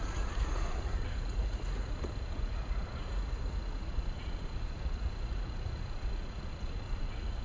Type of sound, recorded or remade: remade